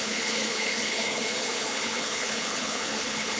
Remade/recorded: remade